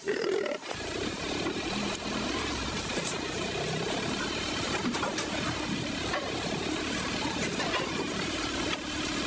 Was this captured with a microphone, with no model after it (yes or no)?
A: no